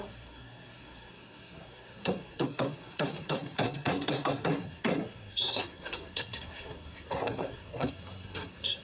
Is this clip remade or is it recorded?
remade